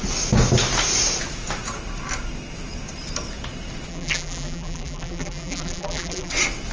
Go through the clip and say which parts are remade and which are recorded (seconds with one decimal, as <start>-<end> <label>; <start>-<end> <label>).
0.0-3.9 recorded; 3.9-6.3 remade; 6.3-6.7 recorded